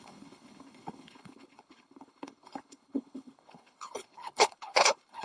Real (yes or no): no